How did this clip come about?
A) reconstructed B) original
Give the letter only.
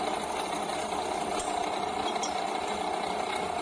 B